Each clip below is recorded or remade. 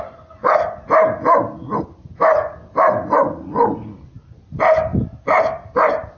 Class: recorded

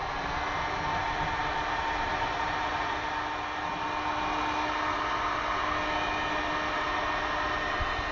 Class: recorded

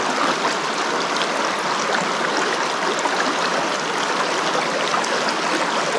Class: recorded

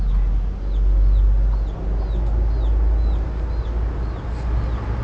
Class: recorded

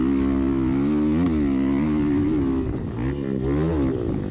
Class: recorded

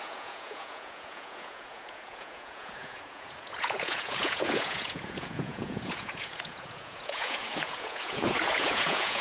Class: remade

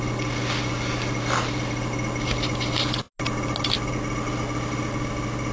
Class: recorded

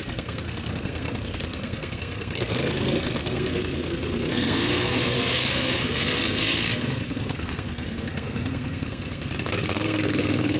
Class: remade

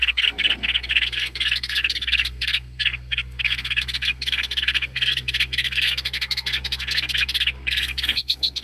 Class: remade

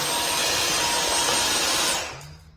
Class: recorded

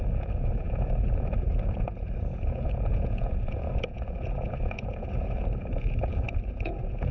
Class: remade